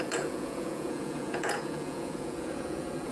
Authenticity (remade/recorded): remade